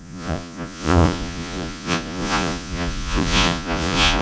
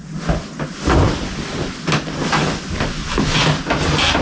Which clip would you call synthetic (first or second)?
first